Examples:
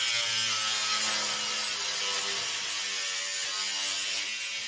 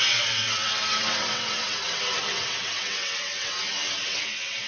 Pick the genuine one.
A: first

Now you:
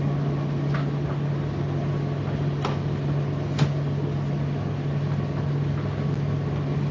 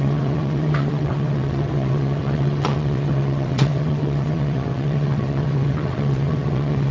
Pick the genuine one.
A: first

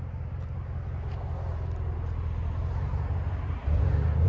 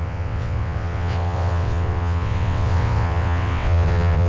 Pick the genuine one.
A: first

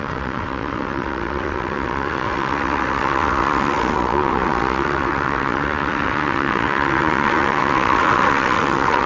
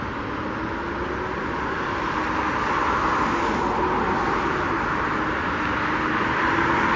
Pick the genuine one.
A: second